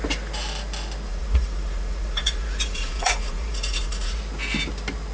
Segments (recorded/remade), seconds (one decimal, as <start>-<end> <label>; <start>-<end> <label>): 0.0-1.1 recorded; 1.1-4.2 remade; 4.2-5.1 recorded